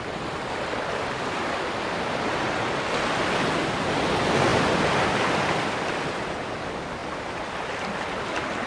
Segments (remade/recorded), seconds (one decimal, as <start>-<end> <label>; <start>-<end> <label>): 0.0-8.7 recorded